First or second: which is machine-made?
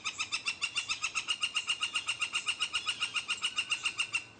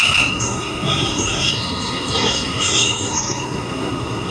second